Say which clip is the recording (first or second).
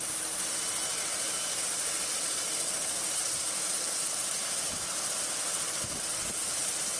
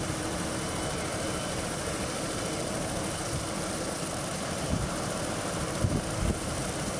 first